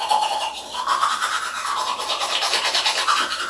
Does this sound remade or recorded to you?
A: remade